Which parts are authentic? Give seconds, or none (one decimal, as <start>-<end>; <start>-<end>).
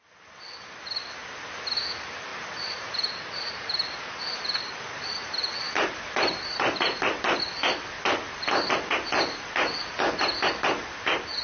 0.0-2.3; 7.4-11.4